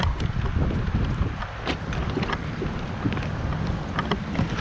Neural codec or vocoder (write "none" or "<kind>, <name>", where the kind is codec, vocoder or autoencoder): none